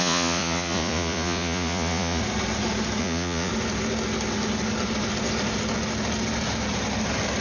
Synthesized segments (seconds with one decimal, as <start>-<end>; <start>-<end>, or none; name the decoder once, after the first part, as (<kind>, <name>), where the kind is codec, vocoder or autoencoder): 0.0-2.2 (vocoder, Vocos); 3.0-3.5